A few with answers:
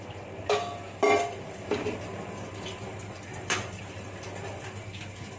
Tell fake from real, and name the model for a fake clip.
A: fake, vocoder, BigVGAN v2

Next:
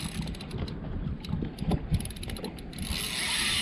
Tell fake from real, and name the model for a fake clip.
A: real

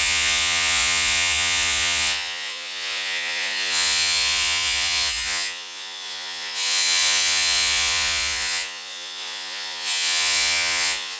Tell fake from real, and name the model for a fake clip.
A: fake, vocoder, Vocos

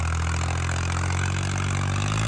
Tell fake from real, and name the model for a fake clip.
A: real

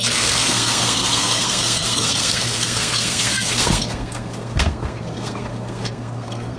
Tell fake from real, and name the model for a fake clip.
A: fake, codec, SNAC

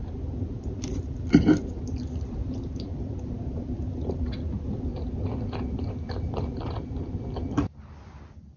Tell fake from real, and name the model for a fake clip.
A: fake, vocoder, BigVGAN v2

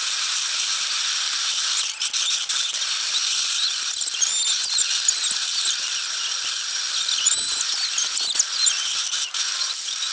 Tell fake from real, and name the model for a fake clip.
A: real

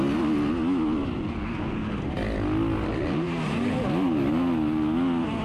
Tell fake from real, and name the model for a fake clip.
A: real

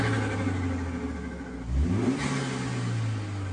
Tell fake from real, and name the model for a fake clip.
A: real